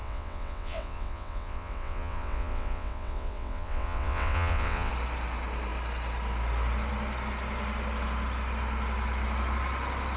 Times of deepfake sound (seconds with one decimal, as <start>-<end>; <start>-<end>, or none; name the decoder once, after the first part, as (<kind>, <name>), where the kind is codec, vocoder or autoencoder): 0.0-4.9 (vocoder, WaveNeXt)